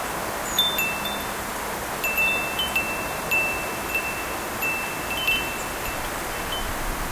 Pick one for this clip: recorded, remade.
recorded